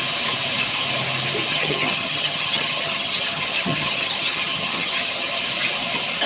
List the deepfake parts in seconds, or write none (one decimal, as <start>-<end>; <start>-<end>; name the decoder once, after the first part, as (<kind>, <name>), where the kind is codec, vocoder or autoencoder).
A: 1.5-5.3 (vocoder, HiFi-GAN)